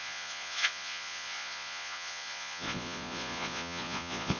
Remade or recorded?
remade